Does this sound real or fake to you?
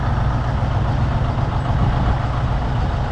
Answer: real